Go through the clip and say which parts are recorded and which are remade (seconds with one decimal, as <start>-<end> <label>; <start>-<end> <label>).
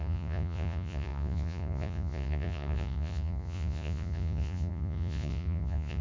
0.0-6.0 remade